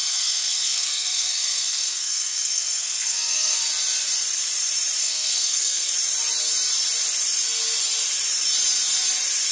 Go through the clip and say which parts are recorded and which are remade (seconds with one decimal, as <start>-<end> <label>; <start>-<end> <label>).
0.0-3.6 remade; 3.6-5.0 recorded; 5.0-5.9 remade; 5.9-9.5 recorded